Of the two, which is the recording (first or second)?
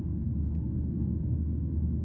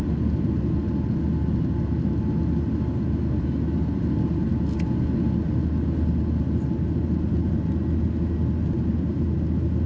second